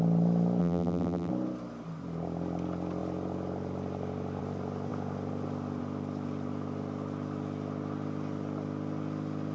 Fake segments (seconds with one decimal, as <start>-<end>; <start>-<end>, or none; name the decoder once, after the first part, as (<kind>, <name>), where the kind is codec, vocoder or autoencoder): 0.6-1.3 (vocoder, BigVGAN v2)